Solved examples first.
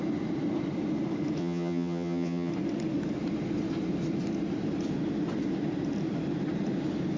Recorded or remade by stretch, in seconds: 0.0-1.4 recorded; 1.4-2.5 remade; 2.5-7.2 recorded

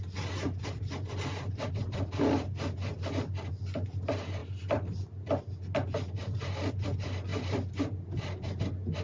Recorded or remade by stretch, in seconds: 0.0-9.0 recorded